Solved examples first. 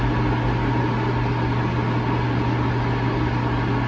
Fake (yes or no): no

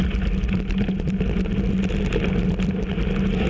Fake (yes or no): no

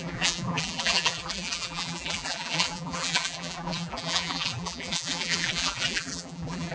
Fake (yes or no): yes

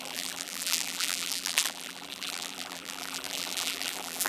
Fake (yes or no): yes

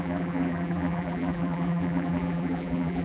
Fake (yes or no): yes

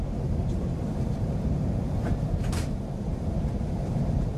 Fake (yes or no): yes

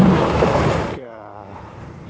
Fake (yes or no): yes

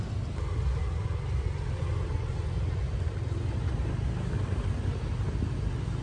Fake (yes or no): no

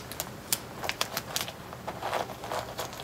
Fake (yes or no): no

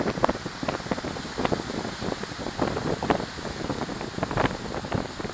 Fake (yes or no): no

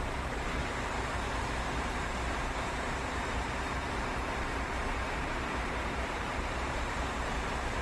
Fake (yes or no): yes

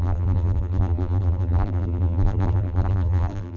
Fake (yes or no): yes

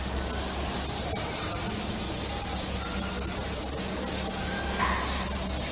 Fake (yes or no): no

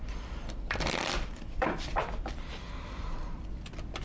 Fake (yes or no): yes